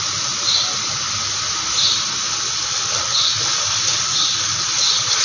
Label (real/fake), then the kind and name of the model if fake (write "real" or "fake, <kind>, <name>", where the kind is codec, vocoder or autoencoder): real